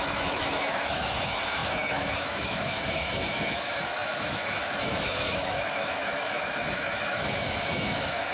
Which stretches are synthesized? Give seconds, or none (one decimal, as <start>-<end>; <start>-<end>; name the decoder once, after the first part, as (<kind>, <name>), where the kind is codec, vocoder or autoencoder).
0.0-8.3 (autoencoder, DAC-VAE)